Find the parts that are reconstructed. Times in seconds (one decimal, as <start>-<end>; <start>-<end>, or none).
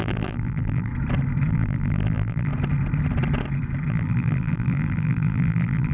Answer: 0.0-0.9; 1.5-2.5; 3.9-5.9